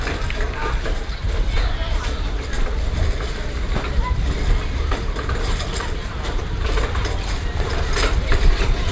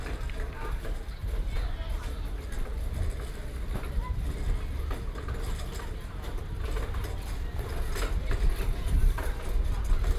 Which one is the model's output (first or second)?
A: first